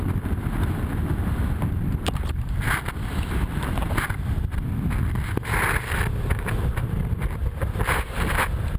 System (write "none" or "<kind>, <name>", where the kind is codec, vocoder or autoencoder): vocoder, BigVGAN v2